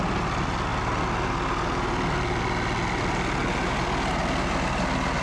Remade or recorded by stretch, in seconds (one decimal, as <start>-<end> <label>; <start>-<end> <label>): 0.0-5.2 recorded